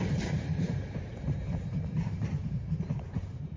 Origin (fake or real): fake